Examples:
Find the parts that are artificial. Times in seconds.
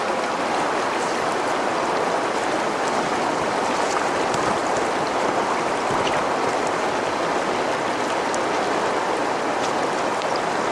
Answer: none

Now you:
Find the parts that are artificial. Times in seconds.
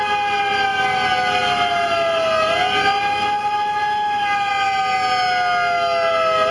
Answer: none